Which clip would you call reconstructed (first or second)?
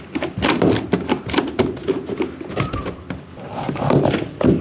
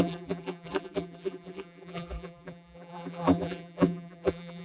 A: second